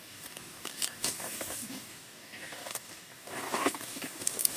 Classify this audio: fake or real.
fake